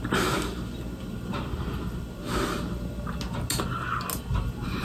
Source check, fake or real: real